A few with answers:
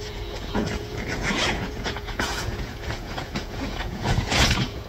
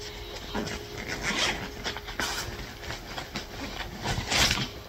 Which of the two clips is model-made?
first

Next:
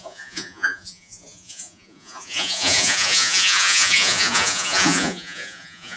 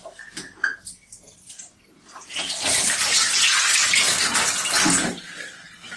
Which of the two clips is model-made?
first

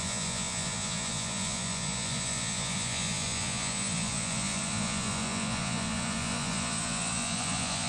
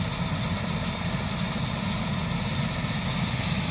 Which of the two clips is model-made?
first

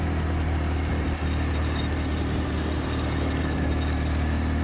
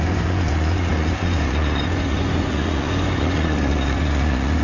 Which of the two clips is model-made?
second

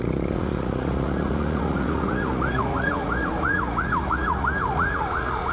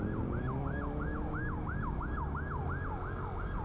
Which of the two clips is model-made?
first